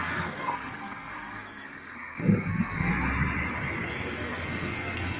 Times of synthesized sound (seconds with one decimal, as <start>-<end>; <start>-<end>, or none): 0.0-2.9; 3.8-5.2